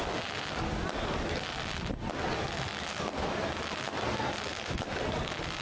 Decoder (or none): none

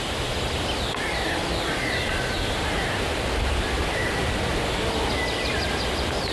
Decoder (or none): vocoder, BigVGAN v2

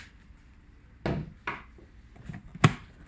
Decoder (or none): none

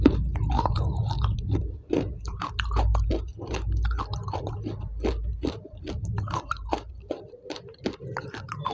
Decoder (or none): none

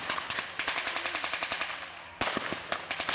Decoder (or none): none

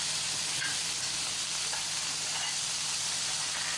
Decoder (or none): none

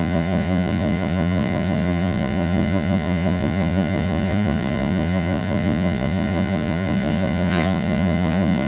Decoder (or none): vocoder, Vocos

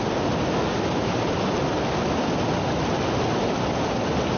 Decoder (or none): none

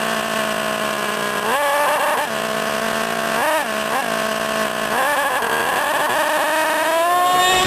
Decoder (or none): none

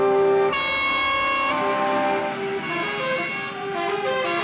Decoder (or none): none